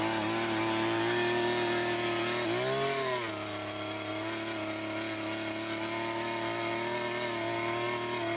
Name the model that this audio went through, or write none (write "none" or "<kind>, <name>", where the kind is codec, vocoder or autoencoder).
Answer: none